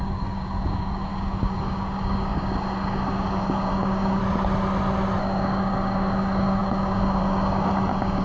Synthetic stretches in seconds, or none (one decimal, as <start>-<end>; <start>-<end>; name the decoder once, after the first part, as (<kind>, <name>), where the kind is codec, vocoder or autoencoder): 0.0-4.2 (codec, DAC); 5.2-8.2